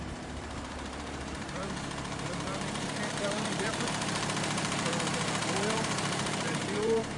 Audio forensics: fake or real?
fake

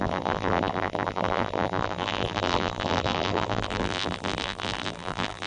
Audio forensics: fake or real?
fake